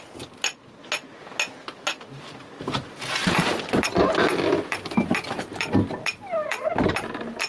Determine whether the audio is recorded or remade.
recorded